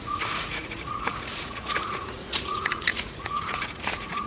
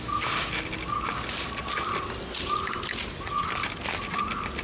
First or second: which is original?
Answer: second